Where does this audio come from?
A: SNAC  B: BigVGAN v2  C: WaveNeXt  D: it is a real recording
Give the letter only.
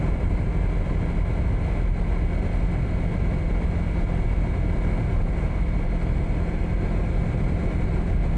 D